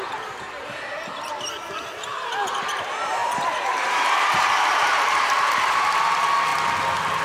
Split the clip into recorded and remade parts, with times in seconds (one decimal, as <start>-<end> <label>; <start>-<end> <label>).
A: 0.0-3.2 recorded; 3.2-5.8 remade; 5.8-7.2 recorded